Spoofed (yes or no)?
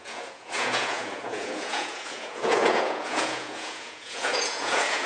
yes